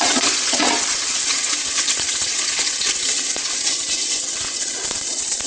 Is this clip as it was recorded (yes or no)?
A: no